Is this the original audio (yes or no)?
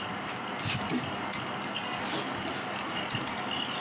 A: yes